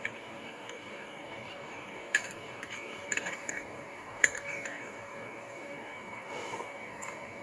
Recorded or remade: remade